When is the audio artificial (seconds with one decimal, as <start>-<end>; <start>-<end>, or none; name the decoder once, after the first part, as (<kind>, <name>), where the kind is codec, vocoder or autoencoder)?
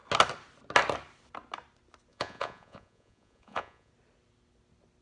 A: 2.1-3.9 (vocoder, Vocos)